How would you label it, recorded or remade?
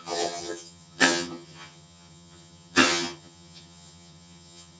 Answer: remade